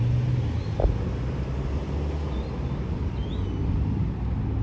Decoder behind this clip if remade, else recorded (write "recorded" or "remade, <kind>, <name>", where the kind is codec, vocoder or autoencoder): recorded